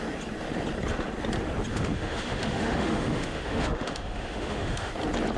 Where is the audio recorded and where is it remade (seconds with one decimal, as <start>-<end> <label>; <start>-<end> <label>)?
0.0-1.7 recorded; 1.7-4.9 remade; 4.9-5.4 recorded